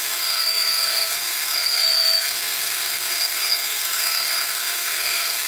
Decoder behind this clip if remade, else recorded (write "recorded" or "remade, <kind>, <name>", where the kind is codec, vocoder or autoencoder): remade, codec, SNAC